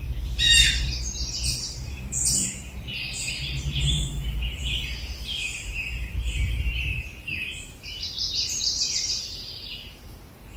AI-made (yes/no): yes